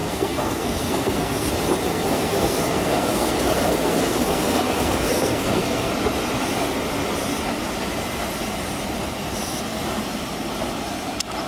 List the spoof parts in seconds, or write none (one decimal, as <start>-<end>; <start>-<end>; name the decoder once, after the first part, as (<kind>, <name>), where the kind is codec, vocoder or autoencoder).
0.0-1.5 (codec, SNAC); 1.9-5.9